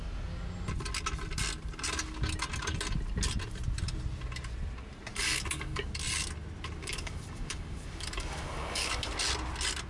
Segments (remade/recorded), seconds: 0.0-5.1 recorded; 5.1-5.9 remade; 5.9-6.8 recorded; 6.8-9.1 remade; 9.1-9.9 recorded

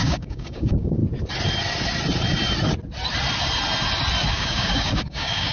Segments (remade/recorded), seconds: 0.0-1.0 remade; 1.0-4.3 recorded; 4.3-5.5 remade

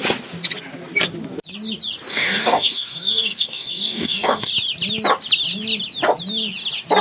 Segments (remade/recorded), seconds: 0.0-2.1 recorded; 2.1-4.5 remade; 4.5-7.0 recorded

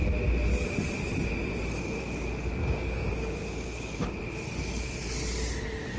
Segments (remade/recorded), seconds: 0.0-2.6 recorded; 2.6-4.2 remade; 4.2-6.0 recorded

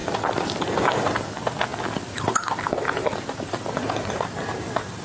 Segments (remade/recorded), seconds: 0.0-5.0 recorded

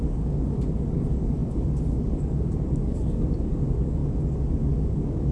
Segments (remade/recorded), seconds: 0.0-4.0 remade; 4.0-4.6 recorded; 4.6-5.3 remade

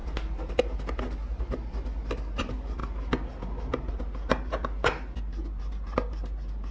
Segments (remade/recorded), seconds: 0.0-6.7 recorded

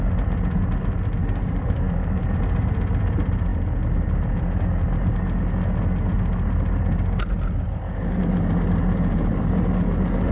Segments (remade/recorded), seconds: 0.0-1.2 recorded; 1.2-2.2 remade; 2.2-10.3 recorded